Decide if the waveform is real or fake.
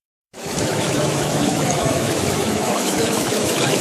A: fake